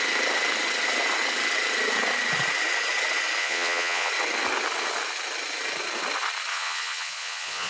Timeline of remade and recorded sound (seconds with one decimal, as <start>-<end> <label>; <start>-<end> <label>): 0.0-3.4 recorded; 3.4-4.1 remade; 4.1-6.5 recorded; 6.5-7.7 remade